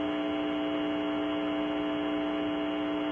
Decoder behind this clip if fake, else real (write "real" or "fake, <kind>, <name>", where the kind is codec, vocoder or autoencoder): real